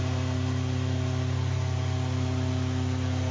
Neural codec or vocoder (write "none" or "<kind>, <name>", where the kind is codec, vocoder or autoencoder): none